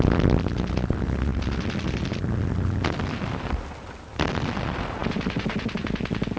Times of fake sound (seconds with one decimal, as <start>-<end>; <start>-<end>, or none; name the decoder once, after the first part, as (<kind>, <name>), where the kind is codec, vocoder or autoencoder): none